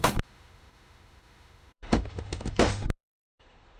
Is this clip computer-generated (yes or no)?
yes